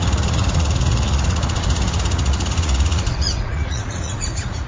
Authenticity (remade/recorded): remade